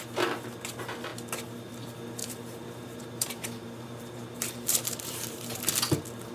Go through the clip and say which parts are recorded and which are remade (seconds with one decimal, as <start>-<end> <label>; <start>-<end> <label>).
0.0-2.2 recorded; 2.2-5.6 remade; 5.6-6.3 recorded